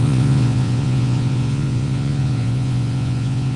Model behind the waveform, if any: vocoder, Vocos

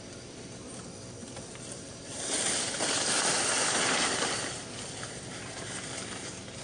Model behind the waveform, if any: none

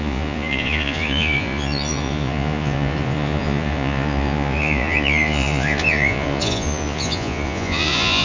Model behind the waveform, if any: vocoder, Vocos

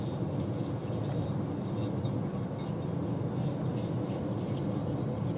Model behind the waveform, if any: none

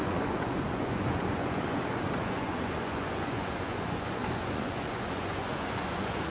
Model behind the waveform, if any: vocoder, Vocos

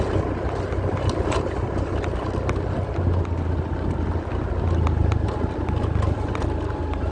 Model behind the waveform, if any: none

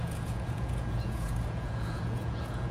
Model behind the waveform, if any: vocoder, Vocos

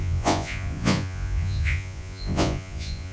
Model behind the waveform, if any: vocoder, Vocos